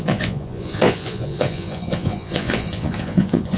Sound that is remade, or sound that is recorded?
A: remade